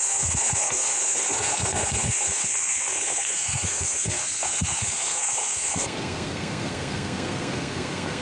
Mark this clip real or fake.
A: fake